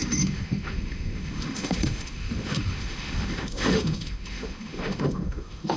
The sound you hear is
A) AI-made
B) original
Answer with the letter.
A